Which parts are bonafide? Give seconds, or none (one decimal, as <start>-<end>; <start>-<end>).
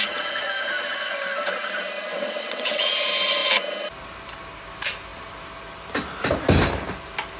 0.0-2.1; 2.9-7.4